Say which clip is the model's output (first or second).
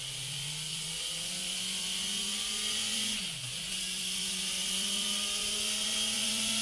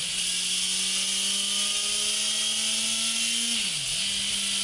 first